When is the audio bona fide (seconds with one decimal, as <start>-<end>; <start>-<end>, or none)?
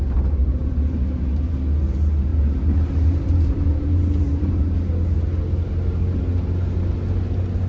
0.0-0.4; 1.5-2.3; 4.6-7.7